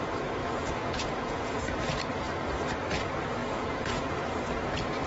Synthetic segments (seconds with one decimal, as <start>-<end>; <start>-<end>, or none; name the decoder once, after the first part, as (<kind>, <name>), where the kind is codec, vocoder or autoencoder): 0.4-1.8 (vocoder, Vocos); 3.4-4.4